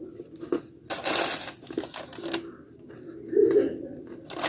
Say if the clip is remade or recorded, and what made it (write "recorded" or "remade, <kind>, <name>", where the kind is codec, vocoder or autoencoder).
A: recorded